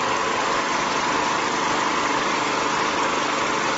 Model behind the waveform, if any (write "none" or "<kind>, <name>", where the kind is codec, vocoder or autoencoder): none